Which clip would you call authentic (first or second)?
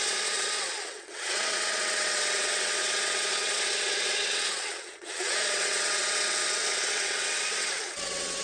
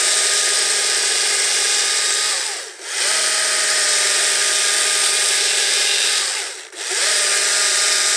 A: second